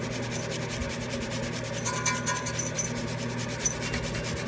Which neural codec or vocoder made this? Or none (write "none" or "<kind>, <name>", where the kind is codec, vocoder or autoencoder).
none